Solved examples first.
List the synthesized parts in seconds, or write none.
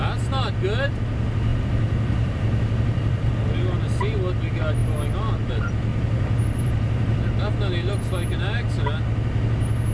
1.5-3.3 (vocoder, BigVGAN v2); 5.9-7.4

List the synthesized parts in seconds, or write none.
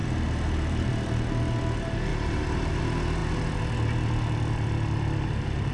0.0-1.1 (vocoder, BigVGAN v2); 2.1-2.8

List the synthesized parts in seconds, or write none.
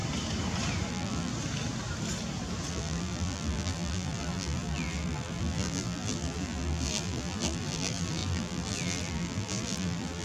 0.9-1.3 (vocoder, BigVGAN v2); 2.7-10.2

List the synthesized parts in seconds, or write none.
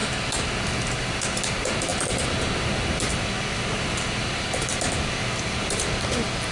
1.0-6.5 (vocoder, BigVGAN v2)